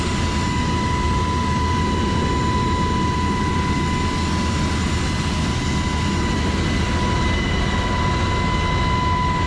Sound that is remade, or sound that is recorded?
recorded